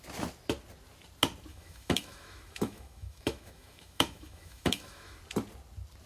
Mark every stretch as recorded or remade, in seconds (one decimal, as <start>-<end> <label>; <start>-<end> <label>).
0.0-1.5 recorded; 1.5-5.2 remade; 5.2-6.1 recorded